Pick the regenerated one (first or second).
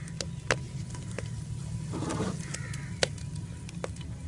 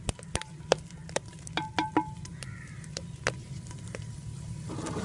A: second